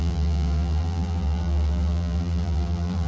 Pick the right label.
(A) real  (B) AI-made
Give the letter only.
B